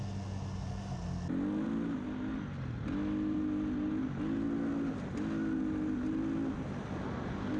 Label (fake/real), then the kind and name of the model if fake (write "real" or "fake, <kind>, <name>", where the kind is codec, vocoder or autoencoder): real